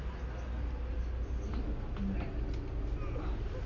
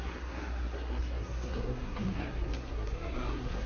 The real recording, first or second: first